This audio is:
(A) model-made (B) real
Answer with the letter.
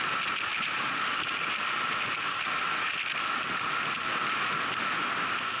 B